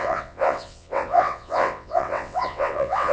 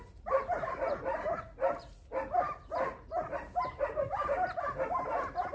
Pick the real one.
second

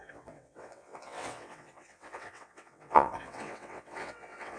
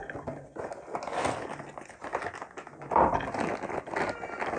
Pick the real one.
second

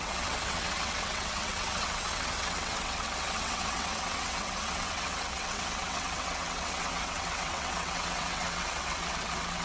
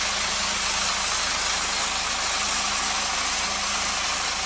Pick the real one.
second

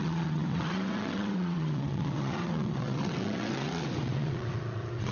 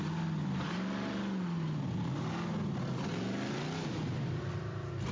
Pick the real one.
second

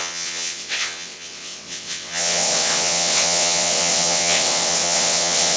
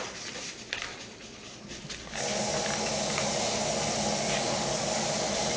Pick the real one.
second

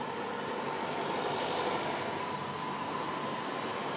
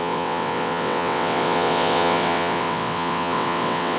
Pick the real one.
first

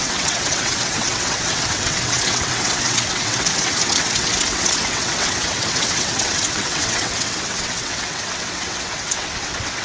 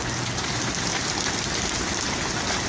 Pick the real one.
second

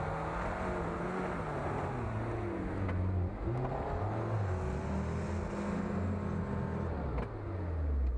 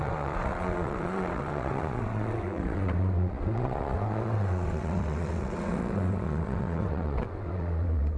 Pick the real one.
first